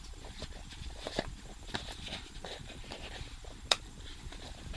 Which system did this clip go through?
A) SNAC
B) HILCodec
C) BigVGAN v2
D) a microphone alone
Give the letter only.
C